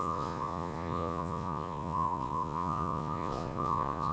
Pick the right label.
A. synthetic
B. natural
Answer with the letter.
A